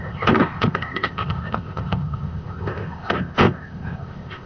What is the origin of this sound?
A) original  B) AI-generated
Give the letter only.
B